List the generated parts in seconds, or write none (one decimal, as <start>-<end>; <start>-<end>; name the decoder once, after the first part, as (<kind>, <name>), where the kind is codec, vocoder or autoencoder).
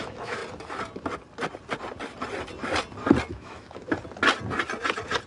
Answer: 0.0-0.4 (autoencoder, DAC-VAE); 3.3-3.8